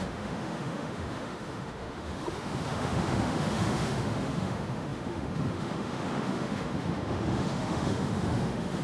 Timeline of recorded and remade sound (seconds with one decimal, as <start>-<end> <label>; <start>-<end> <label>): 0.0-8.8 remade